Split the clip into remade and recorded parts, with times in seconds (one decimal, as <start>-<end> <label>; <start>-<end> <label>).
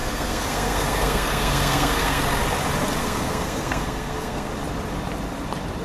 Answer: 0.0-2.2 remade; 2.2-3.0 recorded; 3.0-4.5 remade; 4.5-5.8 recorded